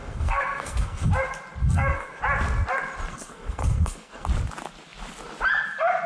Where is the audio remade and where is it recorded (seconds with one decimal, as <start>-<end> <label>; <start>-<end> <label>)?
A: 0.0-1.1 remade; 1.1-1.6 recorded; 1.6-2.2 remade; 2.2-3.1 recorded; 3.1-4.3 remade; 4.3-6.1 recorded